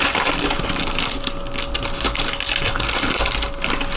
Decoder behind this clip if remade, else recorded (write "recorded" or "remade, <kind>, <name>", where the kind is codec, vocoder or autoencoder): recorded